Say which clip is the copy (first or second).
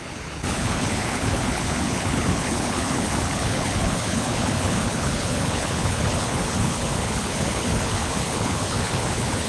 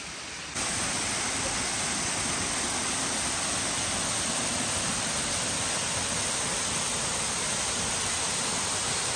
first